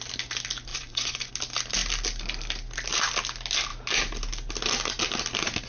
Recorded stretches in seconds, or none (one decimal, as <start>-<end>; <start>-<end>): 0.0-0.7; 1.3-5.7